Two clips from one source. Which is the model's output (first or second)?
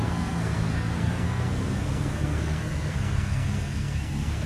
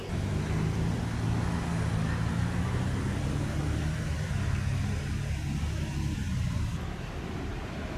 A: first